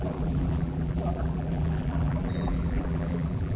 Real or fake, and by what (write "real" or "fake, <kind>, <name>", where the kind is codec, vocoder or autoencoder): fake, vocoder, BigVGAN v2